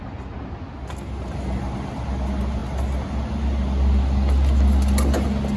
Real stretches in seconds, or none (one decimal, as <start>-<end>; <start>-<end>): 0.0-5.6